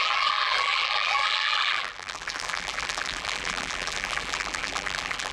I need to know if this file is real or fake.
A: fake